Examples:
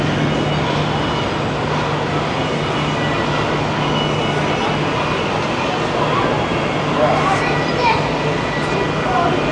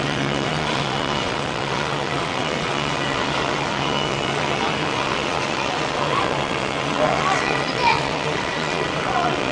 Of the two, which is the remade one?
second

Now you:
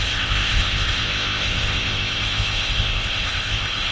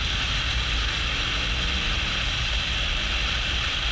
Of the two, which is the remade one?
first